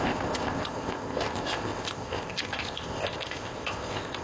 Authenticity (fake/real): fake